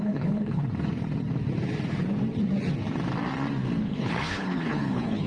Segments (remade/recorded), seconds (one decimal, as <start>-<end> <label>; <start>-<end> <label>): 0.0-0.6 remade; 0.6-3.8 recorded; 3.8-5.3 remade